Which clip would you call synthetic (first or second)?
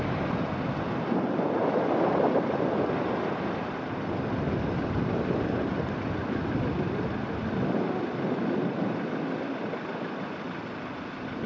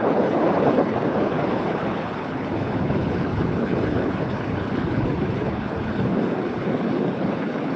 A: second